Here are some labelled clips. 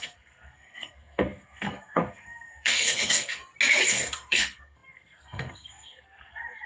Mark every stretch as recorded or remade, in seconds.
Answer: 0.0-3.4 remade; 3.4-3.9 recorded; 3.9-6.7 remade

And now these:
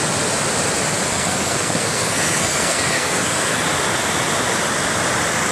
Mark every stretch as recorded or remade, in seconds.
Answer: 0.0-1.1 recorded; 1.1-3.6 remade; 3.6-5.5 recorded

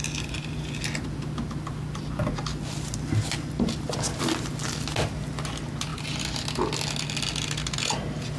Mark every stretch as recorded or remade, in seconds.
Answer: 0.0-8.4 recorded

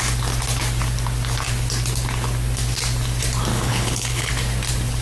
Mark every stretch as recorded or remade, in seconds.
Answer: 0.0-3.5 recorded; 3.5-4.3 remade; 4.3-5.0 recorded